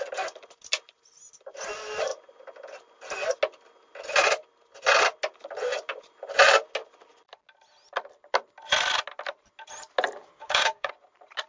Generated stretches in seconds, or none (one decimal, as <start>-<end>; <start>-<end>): 10.2-10.9